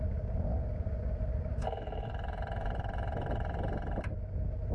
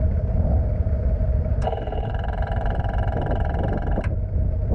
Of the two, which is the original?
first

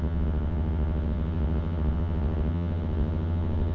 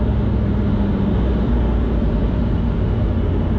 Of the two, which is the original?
second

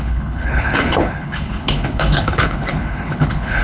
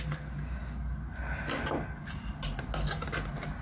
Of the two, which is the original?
second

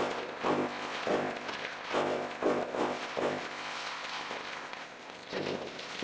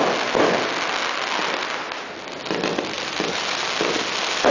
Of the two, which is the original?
second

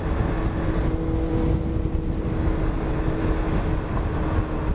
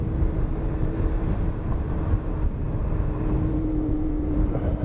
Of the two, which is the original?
first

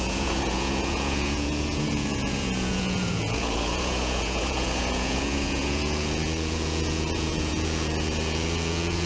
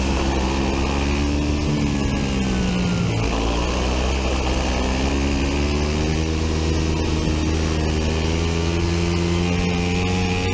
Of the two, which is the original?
second